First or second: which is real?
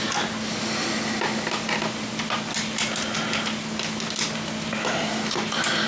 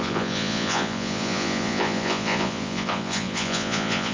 first